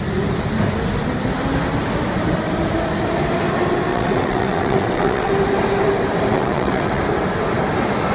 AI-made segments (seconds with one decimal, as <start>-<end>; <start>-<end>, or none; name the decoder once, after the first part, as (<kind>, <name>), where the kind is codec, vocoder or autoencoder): 3.9-5.3 (vocoder, WaveNeXt); 6.3-7.0

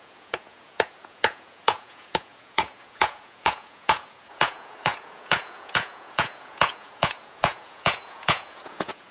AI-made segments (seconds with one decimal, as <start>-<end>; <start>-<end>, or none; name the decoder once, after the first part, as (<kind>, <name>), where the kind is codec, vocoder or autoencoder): 0.0-9.1 (vocoder, Vocos)